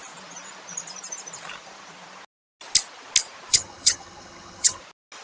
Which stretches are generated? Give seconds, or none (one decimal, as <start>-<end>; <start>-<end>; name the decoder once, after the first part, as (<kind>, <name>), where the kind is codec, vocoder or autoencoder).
3.5-4.8 (vocoder, HiFi-GAN)

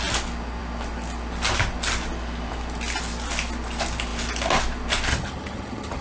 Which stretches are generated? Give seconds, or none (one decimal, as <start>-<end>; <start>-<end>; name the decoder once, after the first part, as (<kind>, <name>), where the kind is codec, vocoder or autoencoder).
5.1-6.0 (vocoder, HiFi-GAN)

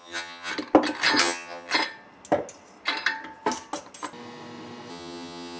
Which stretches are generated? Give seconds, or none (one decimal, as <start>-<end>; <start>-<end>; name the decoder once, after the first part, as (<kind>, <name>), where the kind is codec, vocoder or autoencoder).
0.0-0.5 (vocoder, HiFi-GAN); 1.2-1.7; 4.9-5.6

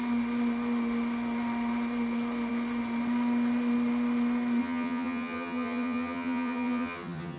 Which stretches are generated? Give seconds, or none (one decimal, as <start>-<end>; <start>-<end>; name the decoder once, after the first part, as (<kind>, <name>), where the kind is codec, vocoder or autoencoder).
4.6-7.4 (vocoder, HiFi-GAN)